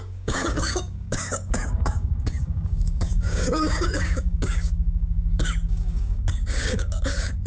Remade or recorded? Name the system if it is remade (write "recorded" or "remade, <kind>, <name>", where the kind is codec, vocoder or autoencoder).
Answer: remade, codec, DAC